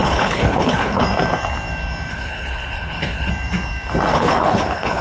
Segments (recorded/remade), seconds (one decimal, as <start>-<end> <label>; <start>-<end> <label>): 0.0-1.0 remade; 1.0-2.1 recorded; 2.1-3.3 remade; 3.3-4.1 recorded; 4.1-5.0 remade